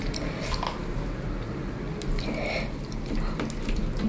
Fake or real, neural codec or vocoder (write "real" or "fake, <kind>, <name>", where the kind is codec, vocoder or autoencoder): real